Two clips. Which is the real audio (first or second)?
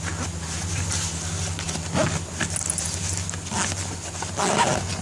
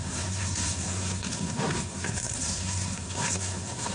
first